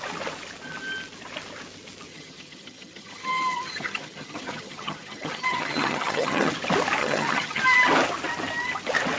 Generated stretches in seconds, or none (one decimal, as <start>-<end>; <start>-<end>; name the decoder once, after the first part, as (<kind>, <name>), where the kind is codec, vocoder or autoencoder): 2.1-6.5 (vocoder, HiFi-GAN); 7.0-7.6